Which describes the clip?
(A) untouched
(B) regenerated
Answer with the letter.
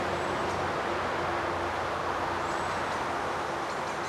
A